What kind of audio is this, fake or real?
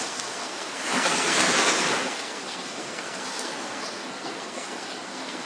fake